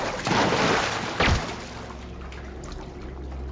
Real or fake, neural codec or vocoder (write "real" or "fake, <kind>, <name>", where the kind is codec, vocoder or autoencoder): real